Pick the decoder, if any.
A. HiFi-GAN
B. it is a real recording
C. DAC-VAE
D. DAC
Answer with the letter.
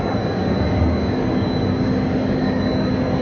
D